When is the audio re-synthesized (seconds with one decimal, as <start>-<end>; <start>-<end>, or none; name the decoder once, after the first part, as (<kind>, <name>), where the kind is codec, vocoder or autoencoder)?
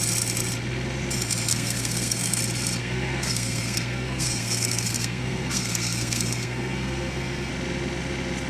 1.5-2.4 (codec, SNAC); 2.8-7.5